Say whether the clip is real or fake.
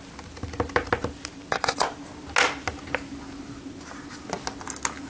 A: real